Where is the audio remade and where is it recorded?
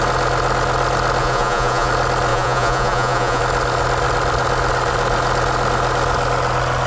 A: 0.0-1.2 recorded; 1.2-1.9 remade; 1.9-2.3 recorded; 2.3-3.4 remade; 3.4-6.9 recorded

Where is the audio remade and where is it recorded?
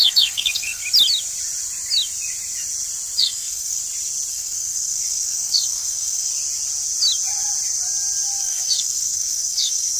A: 0.0-0.8 remade; 0.8-3.2 recorded; 3.2-3.8 remade; 3.8-4.3 recorded; 4.3-6.3 remade; 6.3-8.4 recorded; 8.4-10.0 remade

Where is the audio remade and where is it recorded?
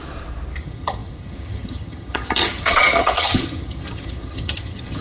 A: 0.0-0.6 recorded; 0.6-5.0 remade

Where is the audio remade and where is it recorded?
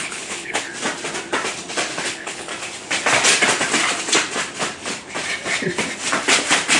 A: 0.0-0.7 remade; 0.7-2.1 recorded; 2.1-2.5 remade; 2.5-6.8 recorded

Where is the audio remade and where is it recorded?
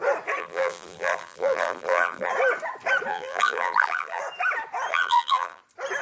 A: 0.0-0.4 recorded; 0.4-2.3 remade; 2.3-3.1 recorded; 3.1-4.2 remade; 4.2-4.9 recorded; 4.9-5.6 remade; 5.6-6.0 recorded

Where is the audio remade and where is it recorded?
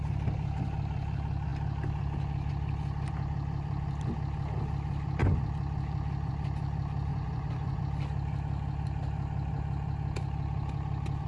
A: 0.0-7.1 recorded; 7.1-7.8 remade; 7.8-11.3 recorded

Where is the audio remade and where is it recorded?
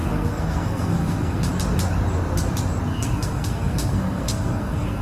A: 0.0-1.5 remade; 1.5-2.9 recorded; 2.9-5.0 remade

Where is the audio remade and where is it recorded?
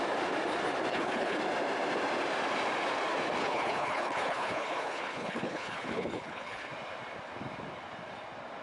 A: 0.0-0.9 recorded; 0.9-1.4 remade; 1.4-3.4 recorded; 3.4-6.7 remade; 6.7-8.6 recorded